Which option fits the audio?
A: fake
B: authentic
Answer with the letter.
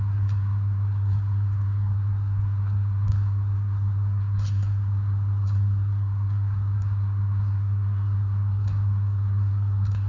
A